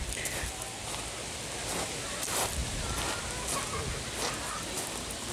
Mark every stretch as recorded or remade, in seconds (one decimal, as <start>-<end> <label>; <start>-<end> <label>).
0.0-5.3 recorded